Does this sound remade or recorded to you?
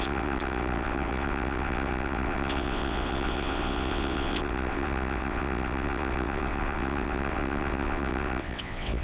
remade